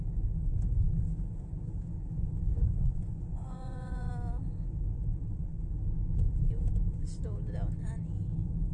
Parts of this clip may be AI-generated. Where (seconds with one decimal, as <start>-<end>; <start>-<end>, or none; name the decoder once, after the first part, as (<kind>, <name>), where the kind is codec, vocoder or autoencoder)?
2.5-4.1 (vocoder, Vocos)